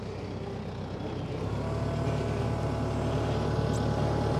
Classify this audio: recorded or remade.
recorded